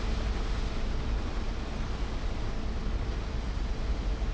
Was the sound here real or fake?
real